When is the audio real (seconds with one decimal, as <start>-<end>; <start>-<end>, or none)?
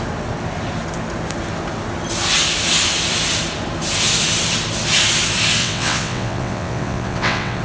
0.0-5.6